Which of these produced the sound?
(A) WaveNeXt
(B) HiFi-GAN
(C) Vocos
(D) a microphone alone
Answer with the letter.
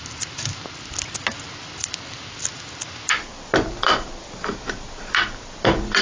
D